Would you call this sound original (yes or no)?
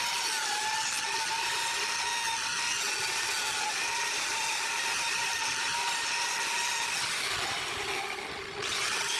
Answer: yes